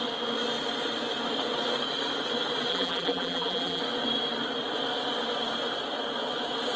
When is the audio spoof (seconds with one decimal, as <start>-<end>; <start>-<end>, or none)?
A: 2.7-3.8